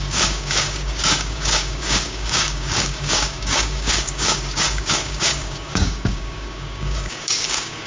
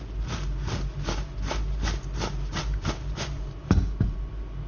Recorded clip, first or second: second